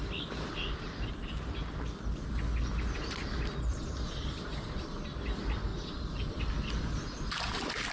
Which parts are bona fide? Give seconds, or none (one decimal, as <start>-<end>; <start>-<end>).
0.0-3.7; 5.1-5.7; 6.4-7.9